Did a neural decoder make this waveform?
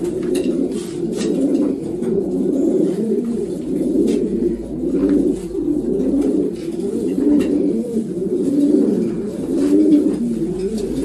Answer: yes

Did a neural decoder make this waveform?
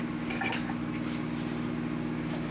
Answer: no